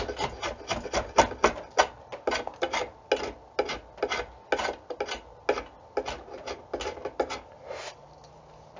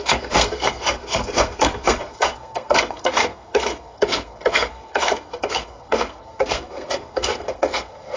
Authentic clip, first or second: first